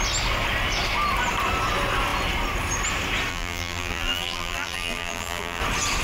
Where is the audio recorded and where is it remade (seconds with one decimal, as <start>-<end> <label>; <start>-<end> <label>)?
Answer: 0.0-3.3 recorded; 3.3-5.6 remade; 5.6-6.0 recorded

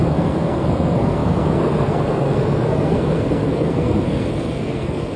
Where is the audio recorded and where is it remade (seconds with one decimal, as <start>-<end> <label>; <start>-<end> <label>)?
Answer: 0.0-5.2 remade

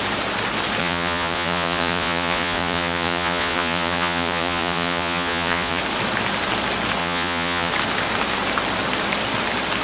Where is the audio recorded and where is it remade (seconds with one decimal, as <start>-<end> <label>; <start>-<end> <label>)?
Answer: 0.0-0.8 recorded; 0.8-5.8 remade; 5.8-7.0 recorded; 7.0-7.7 remade; 7.7-9.8 recorded

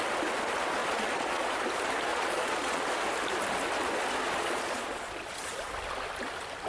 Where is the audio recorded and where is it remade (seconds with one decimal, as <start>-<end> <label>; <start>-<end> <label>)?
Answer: 0.0-0.8 recorded; 0.8-1.5 remade; 1.5-2.1 recorded; 2.1-2.8 remade; 2.8-4.2 recorded; 4.2-5.3 remade; 5.3-6.7 recorded